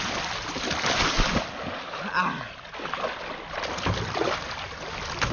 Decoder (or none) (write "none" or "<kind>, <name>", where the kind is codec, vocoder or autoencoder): none